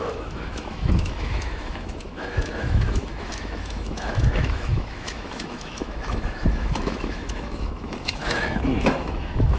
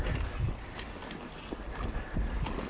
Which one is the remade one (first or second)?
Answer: first